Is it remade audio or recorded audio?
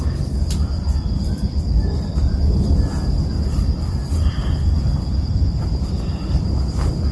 recorded